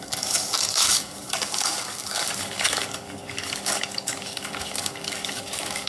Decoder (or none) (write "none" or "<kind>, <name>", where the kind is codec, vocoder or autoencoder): codec, DAC